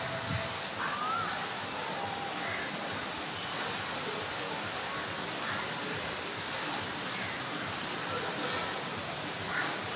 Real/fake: real